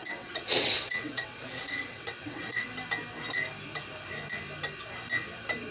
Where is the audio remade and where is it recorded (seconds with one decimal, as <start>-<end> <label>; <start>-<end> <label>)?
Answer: 0.0-2.7 remade; 2.7-5.7 recorded